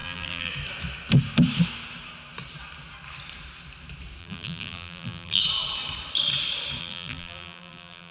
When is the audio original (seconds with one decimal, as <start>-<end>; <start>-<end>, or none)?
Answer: 0.5-4.2; 5.4-6.8